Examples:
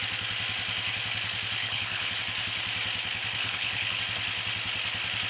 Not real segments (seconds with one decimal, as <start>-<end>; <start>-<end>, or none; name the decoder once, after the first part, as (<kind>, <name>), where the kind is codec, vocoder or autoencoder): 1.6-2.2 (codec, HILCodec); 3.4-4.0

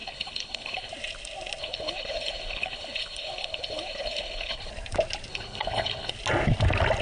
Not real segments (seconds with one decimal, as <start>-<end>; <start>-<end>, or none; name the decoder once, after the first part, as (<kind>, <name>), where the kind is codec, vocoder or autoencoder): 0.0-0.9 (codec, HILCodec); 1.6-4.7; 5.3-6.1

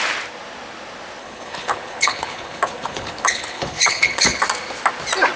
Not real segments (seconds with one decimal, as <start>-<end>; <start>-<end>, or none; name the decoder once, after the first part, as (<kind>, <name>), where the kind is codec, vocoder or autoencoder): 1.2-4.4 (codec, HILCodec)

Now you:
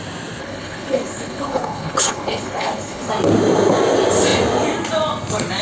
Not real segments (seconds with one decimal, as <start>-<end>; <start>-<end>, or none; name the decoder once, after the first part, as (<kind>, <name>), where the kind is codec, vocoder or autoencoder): 0.4-3.1 (codec, HILCodec)